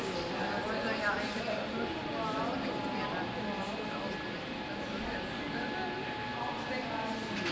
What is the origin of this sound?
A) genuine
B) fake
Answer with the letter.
A